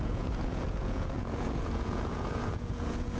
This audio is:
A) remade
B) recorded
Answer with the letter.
A